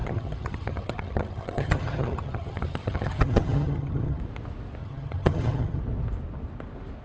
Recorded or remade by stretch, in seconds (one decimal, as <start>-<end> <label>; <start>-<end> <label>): 0.0-4.2 remade; 4.2-4.8 recorded; 4.8-5.8 remade; 5.8-7.0 recorded